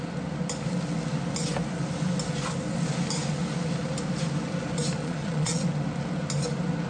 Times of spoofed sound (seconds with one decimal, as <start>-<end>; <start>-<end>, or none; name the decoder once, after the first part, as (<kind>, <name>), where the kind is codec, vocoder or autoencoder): 5.0-5.6 (vocoder, Vocos)